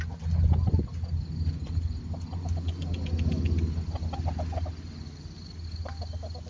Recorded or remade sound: recorded